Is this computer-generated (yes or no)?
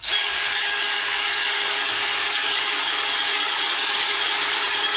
yes